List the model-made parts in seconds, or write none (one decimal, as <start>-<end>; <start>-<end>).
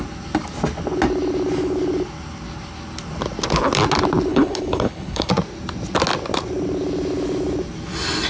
4.3-5.3